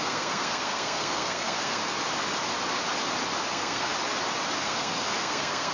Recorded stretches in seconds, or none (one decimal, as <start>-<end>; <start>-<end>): 1.8-3.5; 3.9-4.6

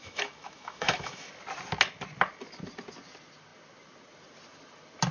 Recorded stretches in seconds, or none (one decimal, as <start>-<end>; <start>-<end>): 1.3-5.1

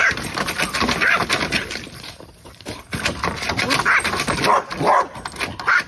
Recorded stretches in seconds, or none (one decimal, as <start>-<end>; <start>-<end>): 0.0-5.9

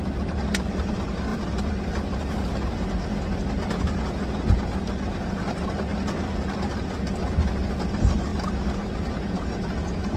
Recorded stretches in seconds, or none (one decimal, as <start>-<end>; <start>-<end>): 0.0-10.2

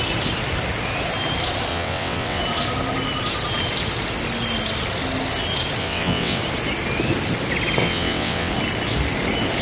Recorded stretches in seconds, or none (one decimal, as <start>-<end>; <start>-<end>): 0.0-1.7; 2.4-5.8; 6.4-7.8; 8.5-9.6

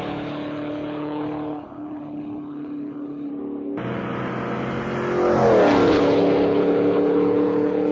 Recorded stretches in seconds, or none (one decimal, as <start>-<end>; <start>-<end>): 3.3-5.9

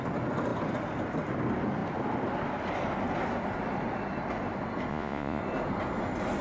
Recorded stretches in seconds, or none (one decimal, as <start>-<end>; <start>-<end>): 0.0-4.9; 5.4-6.4

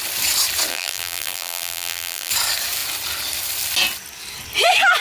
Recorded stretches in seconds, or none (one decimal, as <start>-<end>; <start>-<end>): 0.0-0.7; 2.3-5.0